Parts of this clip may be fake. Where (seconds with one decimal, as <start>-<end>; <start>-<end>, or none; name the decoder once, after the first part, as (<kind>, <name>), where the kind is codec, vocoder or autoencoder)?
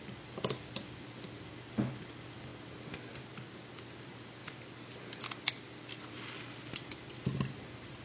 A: none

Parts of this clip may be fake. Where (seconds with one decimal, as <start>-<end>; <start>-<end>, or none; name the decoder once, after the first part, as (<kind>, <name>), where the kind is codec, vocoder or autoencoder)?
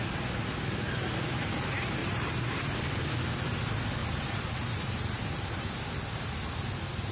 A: 2.0-2.6 (vocoder, BigVGAN v2); 4.0-5.8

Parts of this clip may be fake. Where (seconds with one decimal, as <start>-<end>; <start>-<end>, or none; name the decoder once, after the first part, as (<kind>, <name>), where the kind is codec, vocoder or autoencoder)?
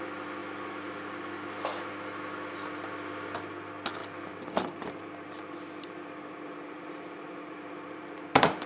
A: 4.0-8.7 (vocoder, BigVGAN v2)